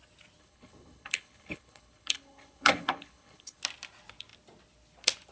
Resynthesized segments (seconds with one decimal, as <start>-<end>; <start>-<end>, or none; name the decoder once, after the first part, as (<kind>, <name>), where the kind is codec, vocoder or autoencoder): 0.4-3.6 (codec, HILCodec)